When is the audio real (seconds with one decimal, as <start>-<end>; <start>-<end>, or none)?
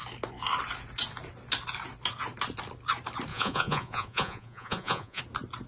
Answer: 0.0-3.3; 5.2-5.7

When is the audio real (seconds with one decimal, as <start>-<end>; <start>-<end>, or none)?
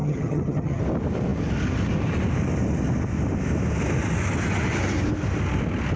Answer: 0.8-6.0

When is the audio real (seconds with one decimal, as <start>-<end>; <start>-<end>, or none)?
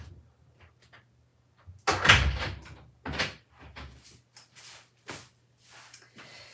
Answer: 0.0-6.5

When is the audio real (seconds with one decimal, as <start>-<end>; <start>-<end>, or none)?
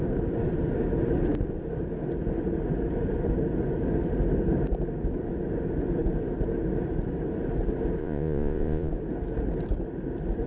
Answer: 0.0-8.0; 8.9-10.5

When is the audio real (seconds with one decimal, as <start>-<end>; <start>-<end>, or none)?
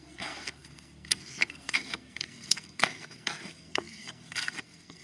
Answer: none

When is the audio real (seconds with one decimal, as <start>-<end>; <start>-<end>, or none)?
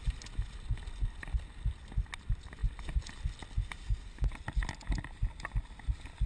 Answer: 0.0-6.3